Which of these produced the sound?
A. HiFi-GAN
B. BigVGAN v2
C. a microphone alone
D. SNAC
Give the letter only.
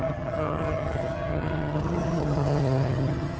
A